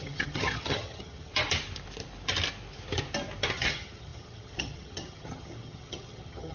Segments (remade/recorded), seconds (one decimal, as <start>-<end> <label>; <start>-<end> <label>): 0.0-1.3 remade; 1.3-3.5 recorded; 3.5-6.5 remade